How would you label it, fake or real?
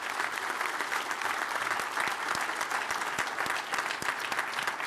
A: real